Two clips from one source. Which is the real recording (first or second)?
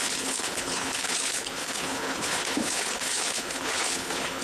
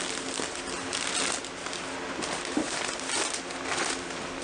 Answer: second